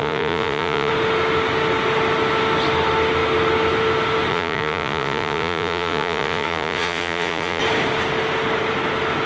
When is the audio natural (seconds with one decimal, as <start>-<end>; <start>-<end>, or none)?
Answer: 0.9-4.3; 7.6-9.3